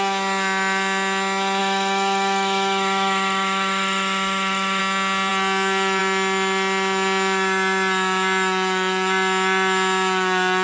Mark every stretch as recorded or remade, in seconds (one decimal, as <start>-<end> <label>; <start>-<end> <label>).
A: 0.0-1.6 recorded; 1.6-4.8 remade; 4.8-10.6 recorded